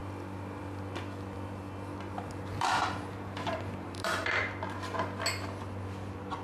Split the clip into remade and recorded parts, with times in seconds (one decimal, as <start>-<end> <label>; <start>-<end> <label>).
0.0-2.5 recorded; 2.5-4.3 remade; 4.3-6.4 recorded